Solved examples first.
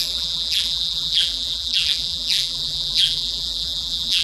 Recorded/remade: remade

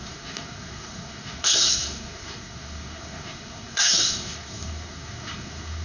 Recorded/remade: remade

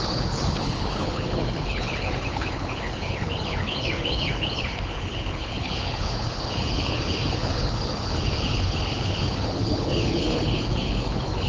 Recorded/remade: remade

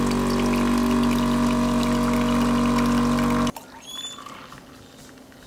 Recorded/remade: recorded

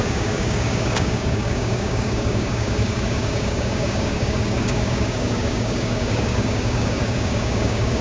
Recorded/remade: remade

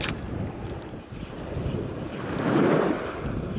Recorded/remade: recorded